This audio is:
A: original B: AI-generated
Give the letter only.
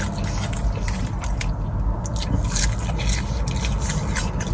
A